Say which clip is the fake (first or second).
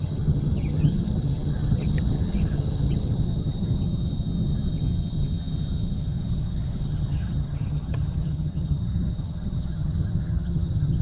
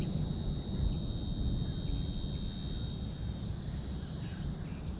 first